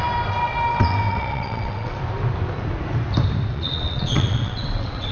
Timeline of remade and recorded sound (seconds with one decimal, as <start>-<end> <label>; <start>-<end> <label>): 0.0-0.7 recorded; 0.7-2.0 remade; 2.0-3.5 recorded; 3.5-5.1 remade